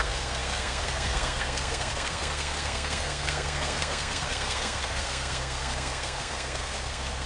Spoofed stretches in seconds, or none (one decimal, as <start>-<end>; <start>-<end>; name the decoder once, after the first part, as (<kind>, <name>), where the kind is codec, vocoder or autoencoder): 0.0-7.3 (codec, SNAC)